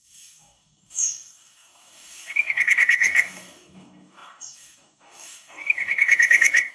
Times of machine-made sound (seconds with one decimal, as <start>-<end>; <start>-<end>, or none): 0.0-6.7